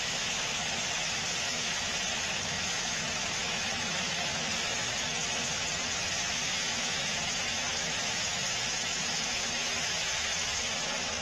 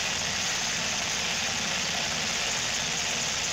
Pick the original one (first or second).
second